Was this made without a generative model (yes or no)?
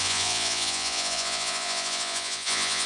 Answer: no